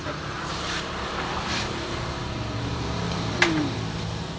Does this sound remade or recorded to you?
remade